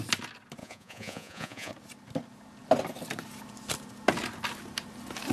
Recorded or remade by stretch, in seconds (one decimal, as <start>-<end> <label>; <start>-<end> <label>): 0.0-0.6 recorded; 0.6-1.7 remade; 1.7-5.3 recorded